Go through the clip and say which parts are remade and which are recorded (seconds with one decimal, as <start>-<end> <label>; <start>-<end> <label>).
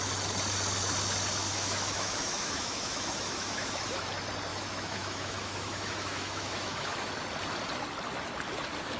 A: 0.0-1.4 recorded; 1.4-4.1 remade; 4.1-4.5 recorded; 4.5-7.1 remade; 7.1-9.0 recorded